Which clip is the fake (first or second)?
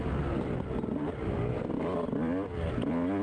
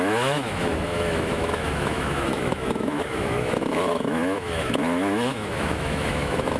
second